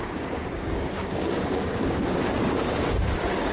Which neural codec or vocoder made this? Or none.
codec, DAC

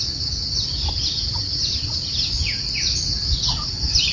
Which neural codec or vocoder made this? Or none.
none